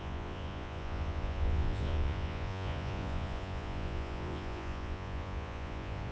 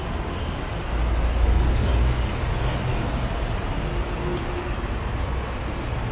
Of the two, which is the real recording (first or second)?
second